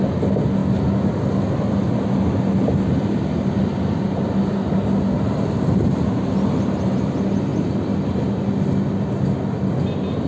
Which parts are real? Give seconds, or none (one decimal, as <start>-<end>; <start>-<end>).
0.0-7.5; 8.4-10.3